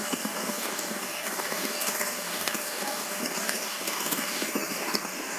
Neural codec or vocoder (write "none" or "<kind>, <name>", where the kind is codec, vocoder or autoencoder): codec, DAC